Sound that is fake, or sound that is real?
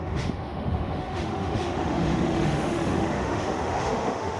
fake